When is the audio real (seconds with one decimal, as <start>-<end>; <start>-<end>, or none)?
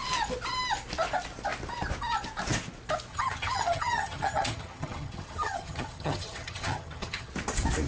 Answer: 0.0-3.1; 7.3-7.9